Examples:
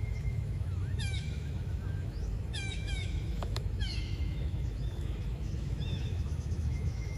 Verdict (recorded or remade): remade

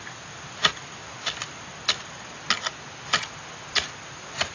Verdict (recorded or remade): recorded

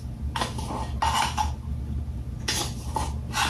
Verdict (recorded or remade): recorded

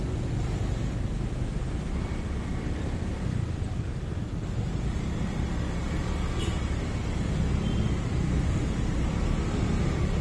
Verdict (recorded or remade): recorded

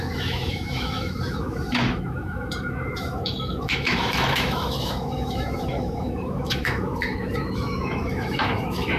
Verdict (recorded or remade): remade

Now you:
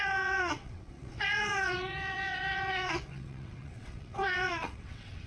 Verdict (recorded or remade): remade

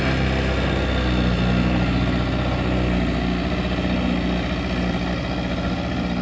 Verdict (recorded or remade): recorded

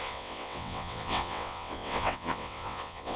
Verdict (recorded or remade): remade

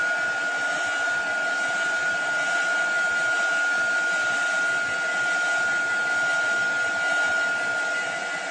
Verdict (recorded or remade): recorded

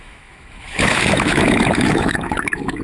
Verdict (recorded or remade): remade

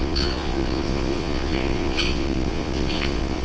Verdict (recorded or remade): remade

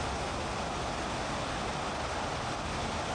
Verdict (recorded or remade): recorded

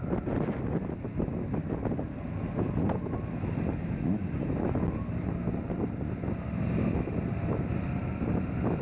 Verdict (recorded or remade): recorded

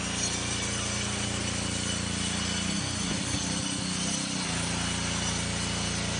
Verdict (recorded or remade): recorded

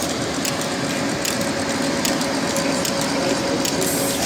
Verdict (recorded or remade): recorded